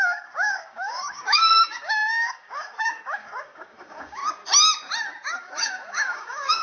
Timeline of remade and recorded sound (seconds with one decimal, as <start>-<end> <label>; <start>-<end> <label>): 0.0-4.2 remade; 4.2-5.4 recorded; 5.4-6.6 remade